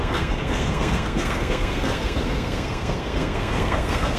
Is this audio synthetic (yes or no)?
yes